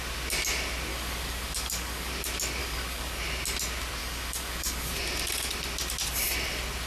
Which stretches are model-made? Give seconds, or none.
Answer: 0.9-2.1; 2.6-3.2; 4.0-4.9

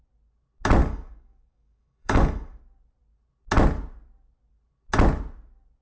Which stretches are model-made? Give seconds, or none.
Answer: 0.8-2.6

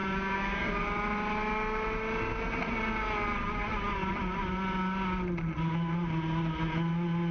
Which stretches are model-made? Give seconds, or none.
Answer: 0.0-0.7

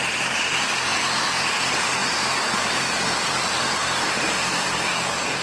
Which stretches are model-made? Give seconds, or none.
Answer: none

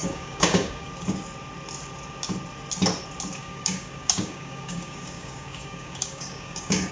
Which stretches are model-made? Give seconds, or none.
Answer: 0.0-0.9; 3.4-6.9

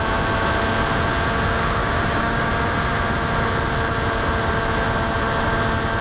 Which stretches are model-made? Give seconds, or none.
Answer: 1.8-2.5